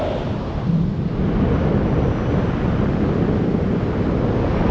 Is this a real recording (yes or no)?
yes